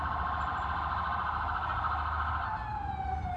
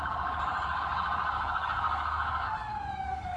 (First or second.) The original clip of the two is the first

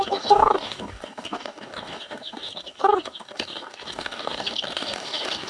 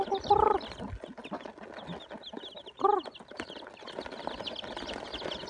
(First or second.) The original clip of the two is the second